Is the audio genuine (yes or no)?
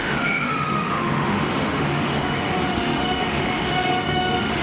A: no